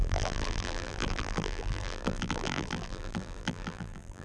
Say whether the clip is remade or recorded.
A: remade